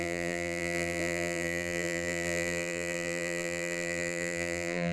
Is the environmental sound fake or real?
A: fake